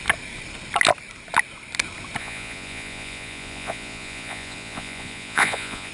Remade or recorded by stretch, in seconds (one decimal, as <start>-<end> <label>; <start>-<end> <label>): 0.0-2.2 recorded; 2.2-5.9 remade